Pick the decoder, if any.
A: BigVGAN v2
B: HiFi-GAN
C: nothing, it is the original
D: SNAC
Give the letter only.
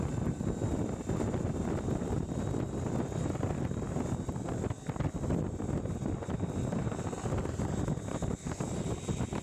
C